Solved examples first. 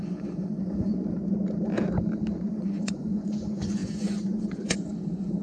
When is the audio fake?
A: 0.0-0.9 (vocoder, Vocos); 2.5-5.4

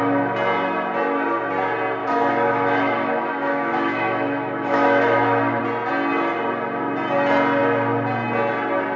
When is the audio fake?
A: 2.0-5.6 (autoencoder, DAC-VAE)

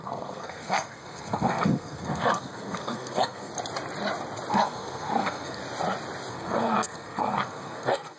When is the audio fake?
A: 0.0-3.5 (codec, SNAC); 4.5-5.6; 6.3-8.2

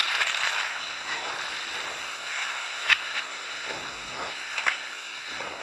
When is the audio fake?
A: 0.7-1.3 (codec, SNAC); 2.0-5.6

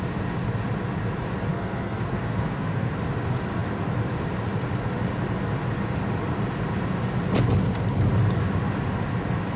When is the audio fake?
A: 1.5-2.9 (codec, SNAC)

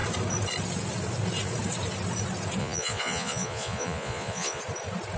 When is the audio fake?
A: 2.6-4.6 (vocoder, Vocos)

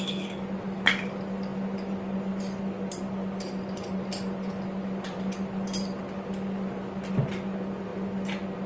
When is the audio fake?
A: none

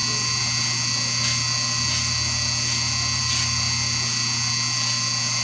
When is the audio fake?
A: none